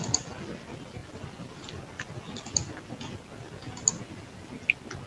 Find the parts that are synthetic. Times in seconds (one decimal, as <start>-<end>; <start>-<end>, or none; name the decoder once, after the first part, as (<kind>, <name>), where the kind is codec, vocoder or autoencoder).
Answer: none

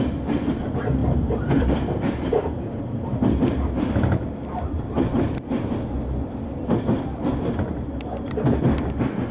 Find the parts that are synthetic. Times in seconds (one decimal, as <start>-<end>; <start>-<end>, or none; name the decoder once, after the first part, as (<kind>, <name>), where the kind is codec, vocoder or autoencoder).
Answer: 1.0-5.8 (vocoder, BigVGAN v2)

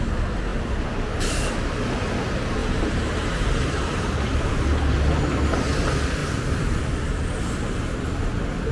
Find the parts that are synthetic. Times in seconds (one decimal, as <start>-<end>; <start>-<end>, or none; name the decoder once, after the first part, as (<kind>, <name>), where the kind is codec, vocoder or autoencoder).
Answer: 2.6-4.5 (vocoder, BigVGAN v2); 6.2-6.8

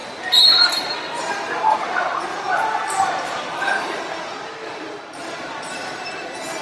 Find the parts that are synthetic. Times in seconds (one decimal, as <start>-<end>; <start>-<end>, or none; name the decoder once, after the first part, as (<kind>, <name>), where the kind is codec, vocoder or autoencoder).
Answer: 0.0-4.0 (vocoder, BigVGAN v2); 4.6-6.6

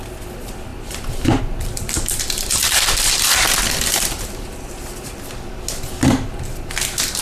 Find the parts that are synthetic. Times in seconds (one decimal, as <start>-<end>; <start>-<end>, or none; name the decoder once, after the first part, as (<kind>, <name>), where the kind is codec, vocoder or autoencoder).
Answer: 0.7-1.4 (vocoder, BigVGAN v2); 2.6-4.7

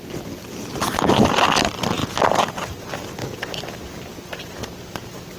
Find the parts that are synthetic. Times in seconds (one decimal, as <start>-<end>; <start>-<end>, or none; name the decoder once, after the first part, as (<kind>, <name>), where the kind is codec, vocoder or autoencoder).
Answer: none